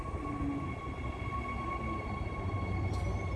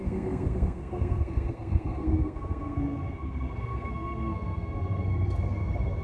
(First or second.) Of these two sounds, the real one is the first